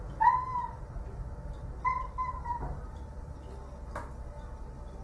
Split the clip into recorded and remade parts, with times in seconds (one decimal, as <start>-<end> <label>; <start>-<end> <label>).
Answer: 0.0-0.5 recorded; 0.5-3.4 remade; 3.4-5.0 recorded